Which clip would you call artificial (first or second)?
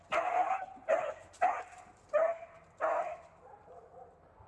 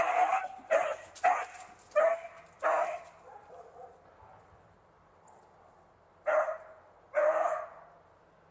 first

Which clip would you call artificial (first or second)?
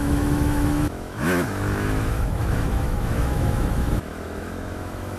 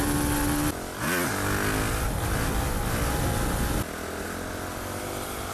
first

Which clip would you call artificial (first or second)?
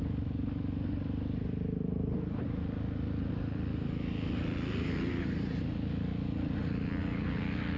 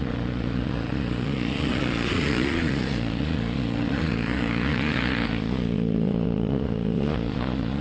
second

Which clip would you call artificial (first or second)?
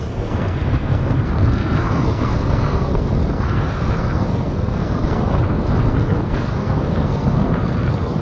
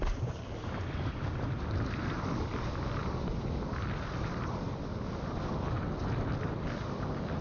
first